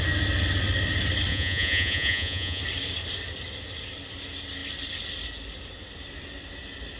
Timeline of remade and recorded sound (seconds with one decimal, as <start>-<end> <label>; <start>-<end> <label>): 0.0-1.3 recorded; 1.3-2.6 remade; 2.6-7.0 recorded